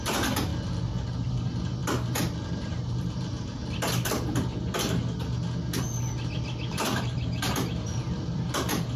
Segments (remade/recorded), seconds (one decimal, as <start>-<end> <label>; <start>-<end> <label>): 0.0-0.5 remade; 0.5-1.3 recorded; 1.3-1.8 remade; 1.8-2.5 recorded; 2.5-3.6 remade; 3.6-6.6 recorded; 6.6-9.0 remade